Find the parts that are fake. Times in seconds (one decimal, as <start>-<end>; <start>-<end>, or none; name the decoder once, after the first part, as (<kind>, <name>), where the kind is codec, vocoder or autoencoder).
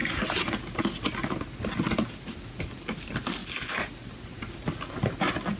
none